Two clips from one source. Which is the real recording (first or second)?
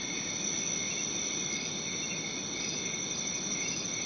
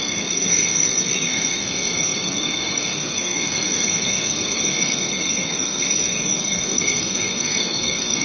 first